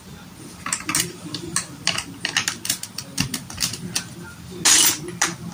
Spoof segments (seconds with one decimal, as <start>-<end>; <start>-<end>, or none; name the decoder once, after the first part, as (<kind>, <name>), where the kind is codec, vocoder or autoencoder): none